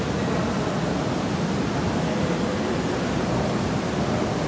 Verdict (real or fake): real